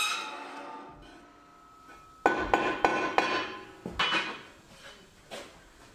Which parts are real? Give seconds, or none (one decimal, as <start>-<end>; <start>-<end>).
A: 0.0-5.9